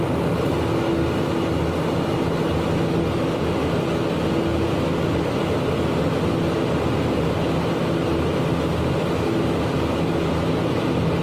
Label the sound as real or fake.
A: real